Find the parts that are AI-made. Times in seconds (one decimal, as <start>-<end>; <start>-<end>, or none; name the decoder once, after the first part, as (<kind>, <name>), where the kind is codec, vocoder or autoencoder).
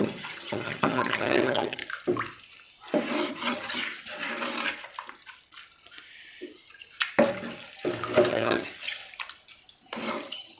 0.0-1.8 (vocoder, HiFi-GAN); 3.3-3.8; 8.3-9.0; 10.1-10.6